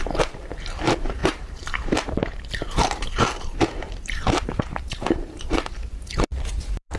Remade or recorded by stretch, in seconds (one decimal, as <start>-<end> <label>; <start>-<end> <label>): 0.0-7.0 remade